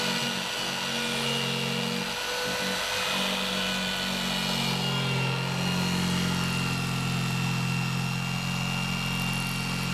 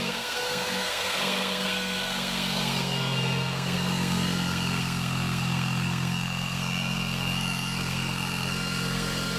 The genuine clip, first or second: first